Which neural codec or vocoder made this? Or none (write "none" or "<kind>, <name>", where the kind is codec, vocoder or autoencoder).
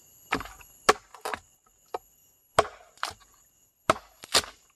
none